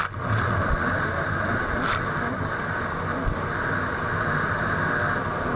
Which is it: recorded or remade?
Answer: recorded